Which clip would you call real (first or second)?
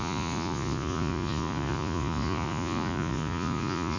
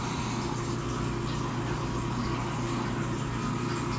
second